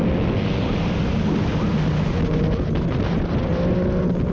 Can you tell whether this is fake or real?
real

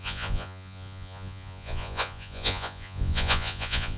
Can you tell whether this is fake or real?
fake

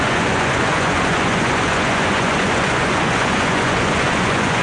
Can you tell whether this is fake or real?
fake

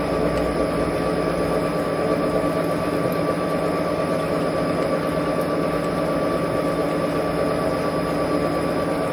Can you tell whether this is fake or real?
real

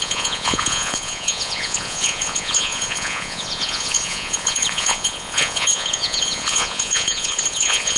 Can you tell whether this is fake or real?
fake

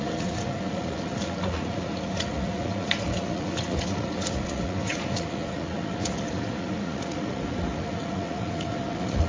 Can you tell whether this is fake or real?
fake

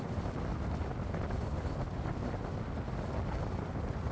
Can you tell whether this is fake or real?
real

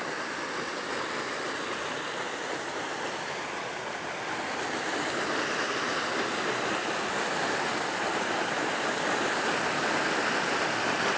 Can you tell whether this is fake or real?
real